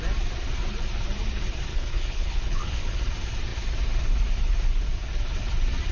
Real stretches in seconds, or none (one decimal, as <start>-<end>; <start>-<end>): 0.0-1.7; 3.0-5.9

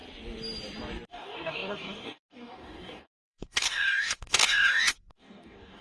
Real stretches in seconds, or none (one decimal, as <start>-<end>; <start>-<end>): 0.0-1.1

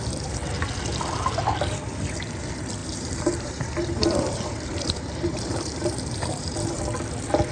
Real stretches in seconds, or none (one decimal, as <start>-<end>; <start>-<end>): 0.0-2.8; 6.8-7.5

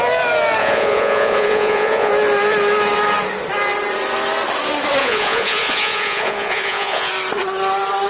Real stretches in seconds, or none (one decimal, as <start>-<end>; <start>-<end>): 0.0-0.6; 2.1-5.0; 7.1-8.1

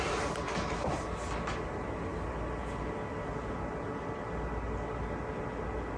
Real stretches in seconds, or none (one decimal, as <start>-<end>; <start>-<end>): 0.0-6.0

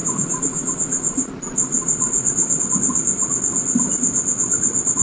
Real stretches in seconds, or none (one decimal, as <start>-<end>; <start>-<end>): 2.6-5.0

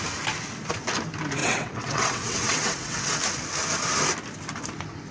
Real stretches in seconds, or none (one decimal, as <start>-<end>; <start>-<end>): 0.0-1.4; 3.2-5.1

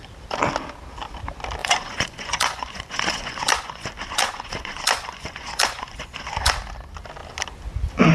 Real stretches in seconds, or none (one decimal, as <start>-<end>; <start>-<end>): 0.0-1.6; 6.5-8.1